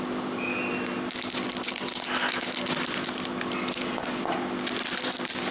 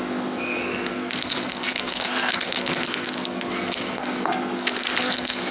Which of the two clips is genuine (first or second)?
first